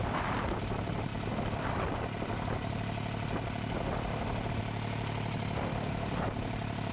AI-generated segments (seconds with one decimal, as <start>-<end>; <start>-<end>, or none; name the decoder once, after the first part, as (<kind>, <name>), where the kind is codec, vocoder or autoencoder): none